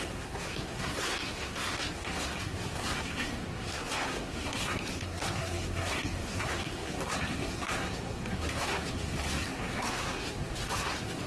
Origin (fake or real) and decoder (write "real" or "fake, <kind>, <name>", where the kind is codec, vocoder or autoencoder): fake, codec, SNAC